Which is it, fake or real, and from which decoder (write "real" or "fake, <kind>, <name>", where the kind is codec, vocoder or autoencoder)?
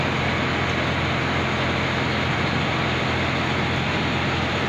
real